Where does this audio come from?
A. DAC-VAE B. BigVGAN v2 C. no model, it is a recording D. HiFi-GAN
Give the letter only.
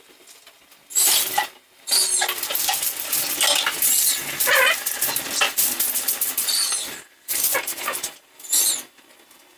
C